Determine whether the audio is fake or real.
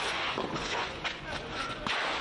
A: fake